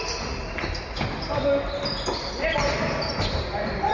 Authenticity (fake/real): real